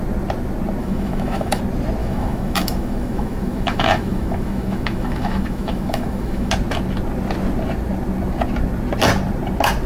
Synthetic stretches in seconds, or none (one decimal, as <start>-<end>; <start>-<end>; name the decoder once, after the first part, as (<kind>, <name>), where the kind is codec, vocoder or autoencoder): 0.8-1.6 (autoencoder, DAC-VAE); 2.0-6.5